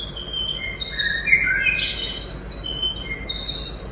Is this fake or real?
real